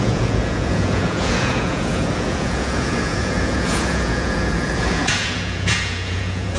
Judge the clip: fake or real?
fake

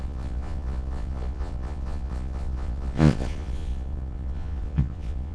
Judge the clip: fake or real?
fake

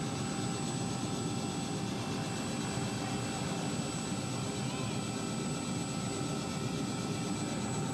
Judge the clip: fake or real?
real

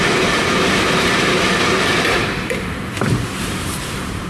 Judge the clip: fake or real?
fake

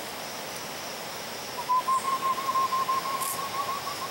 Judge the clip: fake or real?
real